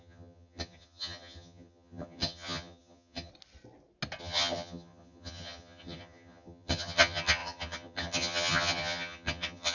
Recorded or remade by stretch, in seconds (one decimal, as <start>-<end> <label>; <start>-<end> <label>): 0.0-3.3 remade; 3.3-4.2 recorded; 4.2-9.7 remade

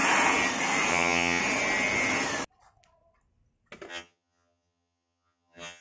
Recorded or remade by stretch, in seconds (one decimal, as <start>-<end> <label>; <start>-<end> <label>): 0.0-0.9 recorded; 0.9-1.4 remade; 1.4-3.9 recorded; 3.9-5.8 remade

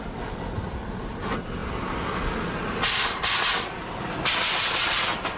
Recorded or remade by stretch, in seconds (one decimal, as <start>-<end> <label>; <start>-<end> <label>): 0.0-5.4 recorded

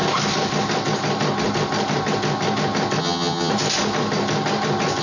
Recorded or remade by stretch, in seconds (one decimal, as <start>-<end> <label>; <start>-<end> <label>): 0.0-3.0 recorded; 3.0-3.5 remade; 3.5-5.0 recorded

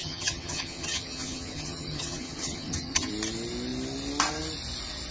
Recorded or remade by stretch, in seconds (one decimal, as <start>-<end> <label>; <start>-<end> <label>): 0.0-3.1 remade; 3.1-5.1 recorded

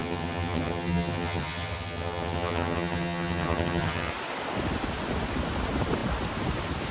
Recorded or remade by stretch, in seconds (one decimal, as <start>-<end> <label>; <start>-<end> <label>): 0.0-4.1 remade; 4.1-6.9 recorded

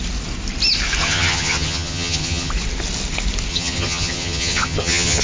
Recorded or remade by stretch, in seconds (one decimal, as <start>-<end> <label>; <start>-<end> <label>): 0.0-1.0 recorded; 1.0-2.5 remade; 2.5-3.5 recorded; 3.5-5.2 remade